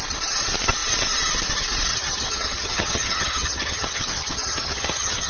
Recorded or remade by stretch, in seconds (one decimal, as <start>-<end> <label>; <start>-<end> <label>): 0.0-1.9 recorded; 1.9-5.3 remade